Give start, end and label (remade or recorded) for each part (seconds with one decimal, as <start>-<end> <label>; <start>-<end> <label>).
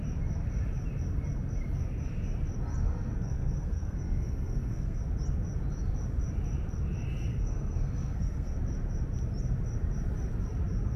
0.0-2.8 recorded; 2.8-5.0 remade; 5.0-7.3 recorded; 7.3-8.6 remade; 8.6-11.0 recorded